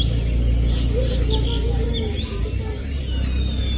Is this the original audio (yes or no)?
yes